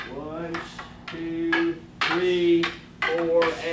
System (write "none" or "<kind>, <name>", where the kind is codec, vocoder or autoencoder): none